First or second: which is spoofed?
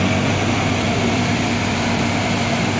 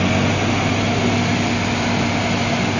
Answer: first